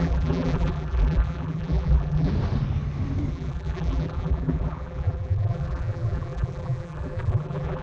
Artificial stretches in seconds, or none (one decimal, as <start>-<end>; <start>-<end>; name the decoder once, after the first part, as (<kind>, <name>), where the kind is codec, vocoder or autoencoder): 0.0-2.3 (vocoder, BigVGAN v2); 3.3-7.8